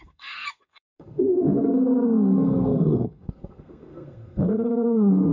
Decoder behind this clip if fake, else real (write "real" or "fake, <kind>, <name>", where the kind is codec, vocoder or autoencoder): fake, codec, SNAC